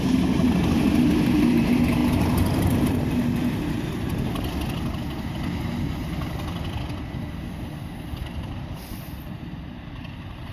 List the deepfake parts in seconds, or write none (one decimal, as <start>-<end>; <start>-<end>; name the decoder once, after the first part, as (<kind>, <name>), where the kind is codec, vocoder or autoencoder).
2.0-3.8 (vocoder, BigVGAN v2); 8.2-10.5